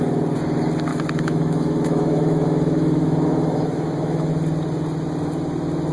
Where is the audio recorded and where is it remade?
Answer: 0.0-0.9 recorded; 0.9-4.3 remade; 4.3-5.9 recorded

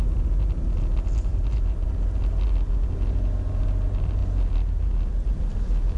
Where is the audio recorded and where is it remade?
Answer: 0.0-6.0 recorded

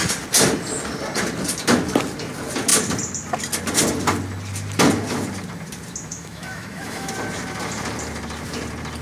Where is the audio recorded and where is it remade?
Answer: 0.0-6.1 recorded; 6.1-7.1 remade; 7.1-9.0 recorded